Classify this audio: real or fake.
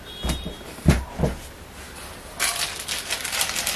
real